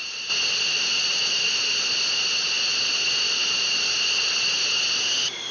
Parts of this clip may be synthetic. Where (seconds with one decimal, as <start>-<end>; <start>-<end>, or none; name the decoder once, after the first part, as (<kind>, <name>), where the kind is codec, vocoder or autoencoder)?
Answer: none